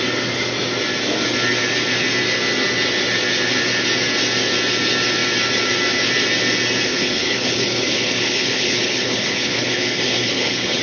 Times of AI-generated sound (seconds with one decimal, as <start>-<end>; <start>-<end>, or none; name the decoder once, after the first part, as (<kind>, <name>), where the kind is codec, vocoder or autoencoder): 6.9-10.8 (codec, HILCodec)